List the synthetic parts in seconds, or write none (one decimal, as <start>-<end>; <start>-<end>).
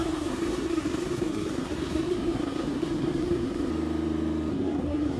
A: 0.0-3.7; 4.5-5.2